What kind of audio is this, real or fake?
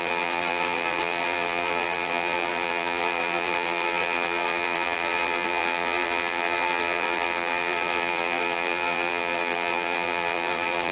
fake